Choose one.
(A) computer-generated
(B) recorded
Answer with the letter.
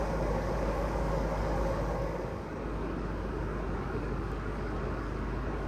A